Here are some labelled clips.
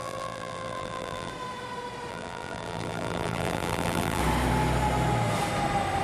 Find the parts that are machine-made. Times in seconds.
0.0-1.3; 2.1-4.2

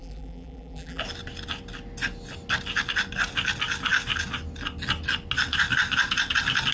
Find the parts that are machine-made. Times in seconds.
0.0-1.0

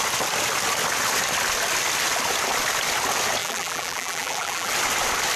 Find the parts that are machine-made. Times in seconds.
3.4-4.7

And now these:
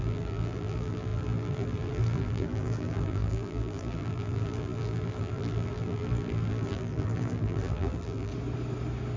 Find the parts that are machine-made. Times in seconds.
0.0-8.3

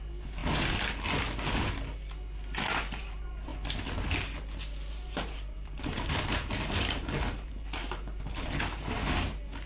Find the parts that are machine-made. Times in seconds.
0.0-0.4; 2.7-3.5; 4.9-9.0